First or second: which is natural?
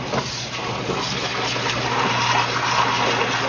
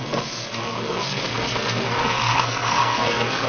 first